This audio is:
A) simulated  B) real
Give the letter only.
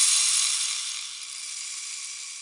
B